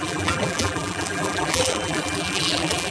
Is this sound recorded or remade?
remade